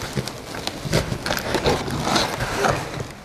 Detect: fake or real real